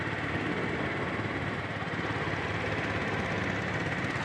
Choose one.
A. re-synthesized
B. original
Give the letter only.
B